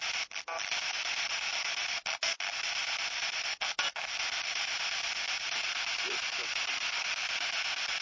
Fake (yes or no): no